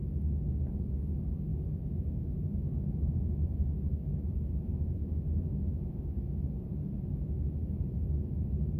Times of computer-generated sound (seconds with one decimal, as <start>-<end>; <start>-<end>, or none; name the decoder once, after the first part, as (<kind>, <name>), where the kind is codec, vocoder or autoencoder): 1.5-6.4 (autoencoder, DAC-VAE)